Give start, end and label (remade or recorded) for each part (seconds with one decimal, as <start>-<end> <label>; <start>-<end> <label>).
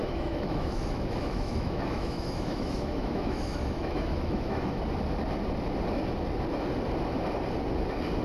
0.0-4.8 remade; 4.8-8.2 recorded